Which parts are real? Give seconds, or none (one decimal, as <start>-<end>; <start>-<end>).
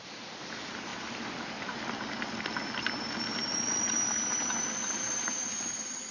0.9-4.6